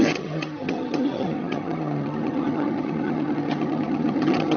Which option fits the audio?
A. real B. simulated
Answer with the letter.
B